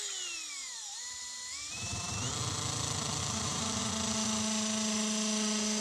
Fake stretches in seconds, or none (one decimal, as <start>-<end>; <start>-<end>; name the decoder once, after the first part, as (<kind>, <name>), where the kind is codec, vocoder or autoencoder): 0.6-2.3 (vocoder, BigVGAN v2); 3.2-3.8